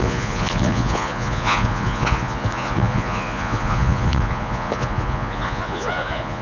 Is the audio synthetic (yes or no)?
yes